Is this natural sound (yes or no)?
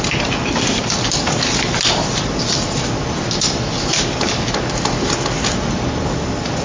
yes